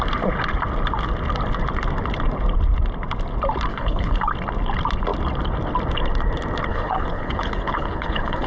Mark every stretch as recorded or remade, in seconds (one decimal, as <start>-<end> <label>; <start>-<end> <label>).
0.0-3.7 recorded; 3.7-4.3 remade; 4.3-6.7 recorded; 6.7-8.5 remade